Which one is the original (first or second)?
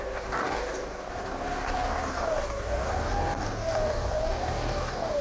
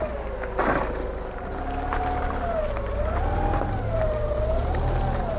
second